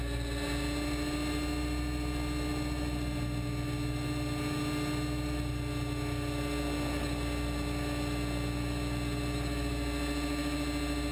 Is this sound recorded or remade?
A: recorded